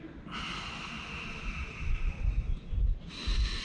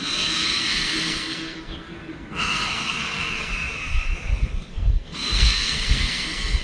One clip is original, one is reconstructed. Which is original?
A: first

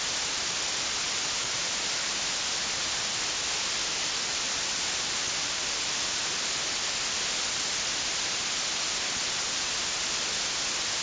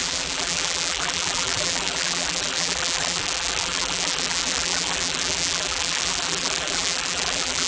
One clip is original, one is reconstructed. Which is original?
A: first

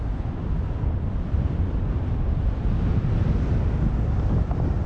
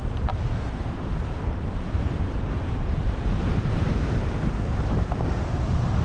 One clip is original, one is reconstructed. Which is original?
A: first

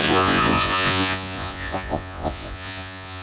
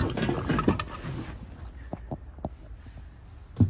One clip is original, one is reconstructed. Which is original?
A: second